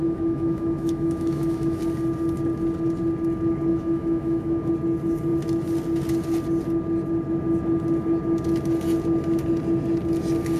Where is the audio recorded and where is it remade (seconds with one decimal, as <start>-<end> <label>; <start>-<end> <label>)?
0.0-1.8 remade; 1.8-3.7 recorded; 3.7-4.7 remade; 4.7-10.6 recorded